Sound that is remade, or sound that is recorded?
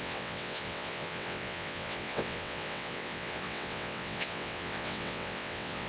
remade